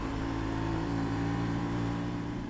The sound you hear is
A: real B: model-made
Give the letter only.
B